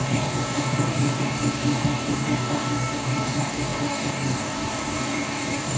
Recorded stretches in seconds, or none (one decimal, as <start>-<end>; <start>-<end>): none